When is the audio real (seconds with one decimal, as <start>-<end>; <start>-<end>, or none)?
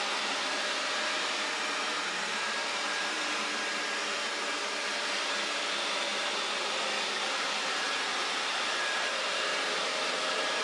6.3-7.2